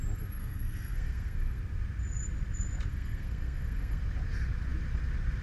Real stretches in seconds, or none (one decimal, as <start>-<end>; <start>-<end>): 0.0-0.4; 1.6-2.9; 4.0-5.4